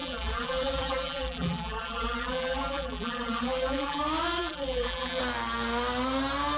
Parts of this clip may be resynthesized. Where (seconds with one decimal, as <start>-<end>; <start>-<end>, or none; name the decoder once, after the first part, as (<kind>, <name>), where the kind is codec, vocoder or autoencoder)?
0.0-4.0 (vocoder, BigVGAN v2); 4.4-5.2